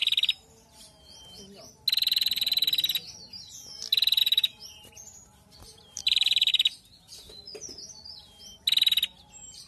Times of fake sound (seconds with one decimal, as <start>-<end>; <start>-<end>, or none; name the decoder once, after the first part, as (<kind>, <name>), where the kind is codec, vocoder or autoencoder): 4.2-6.5 (vocoder, BigVGAN v2)